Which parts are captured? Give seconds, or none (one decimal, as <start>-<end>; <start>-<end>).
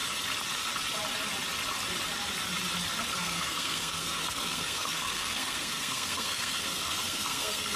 0.0-3.1